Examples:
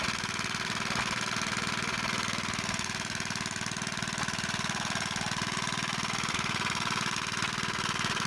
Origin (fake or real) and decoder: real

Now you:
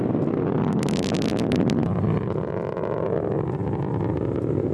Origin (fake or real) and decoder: real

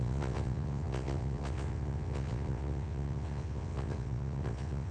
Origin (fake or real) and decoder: fake, vocoder, WaveNeXt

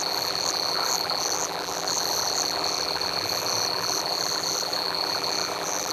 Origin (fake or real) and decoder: fake, vocoder, BigVGAN v2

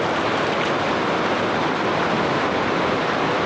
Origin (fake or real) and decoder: real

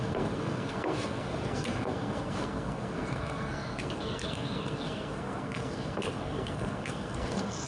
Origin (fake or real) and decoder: fake, codec, SNAC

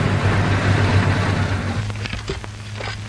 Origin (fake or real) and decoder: real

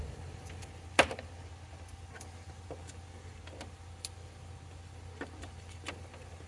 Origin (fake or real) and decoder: real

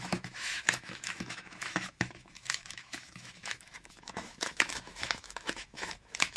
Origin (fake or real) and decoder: fake, autoencoder, DAC-VAE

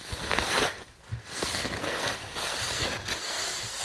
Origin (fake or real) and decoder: fake, codec, SNAC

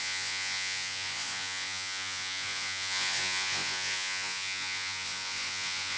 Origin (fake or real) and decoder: fake, vocoder, Vocos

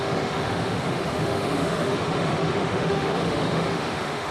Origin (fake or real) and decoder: fake, autoencoder, DAC-VAE